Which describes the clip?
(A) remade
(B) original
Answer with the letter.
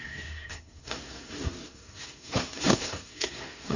A